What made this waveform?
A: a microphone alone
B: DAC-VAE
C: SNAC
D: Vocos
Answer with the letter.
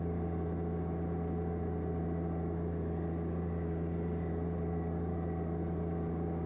A